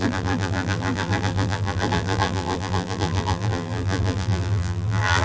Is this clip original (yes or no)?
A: no